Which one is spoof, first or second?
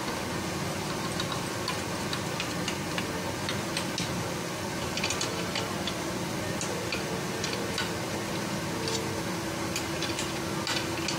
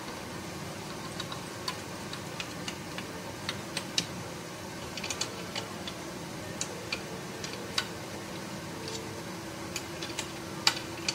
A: second